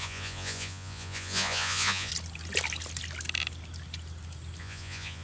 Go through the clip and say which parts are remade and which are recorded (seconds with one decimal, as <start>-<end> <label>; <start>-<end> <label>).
0.0-2.1 remade; 2.1-4.6 recorded; 4.6-5.2 remade